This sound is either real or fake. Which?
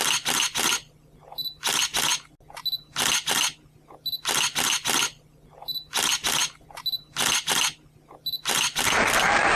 real